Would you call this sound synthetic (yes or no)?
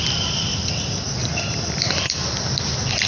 yes